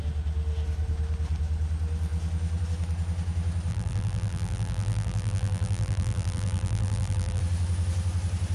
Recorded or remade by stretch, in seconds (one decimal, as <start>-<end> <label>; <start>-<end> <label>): 0.0-3.7 recorded; 3.7-7.4 remade; 7.4-8.5 recorded